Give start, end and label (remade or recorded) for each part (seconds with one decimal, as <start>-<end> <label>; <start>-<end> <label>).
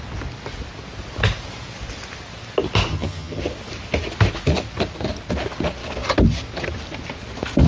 0.0-2.9 recorded; 2.9-3.4 remade; 3.4-7.7 recorded